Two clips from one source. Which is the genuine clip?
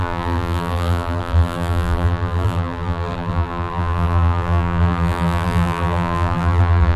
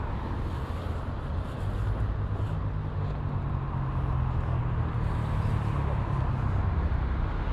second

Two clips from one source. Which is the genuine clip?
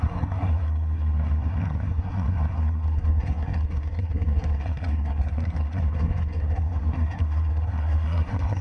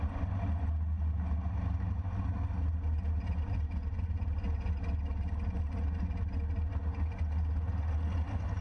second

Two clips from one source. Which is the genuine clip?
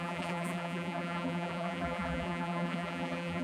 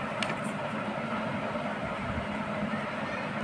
second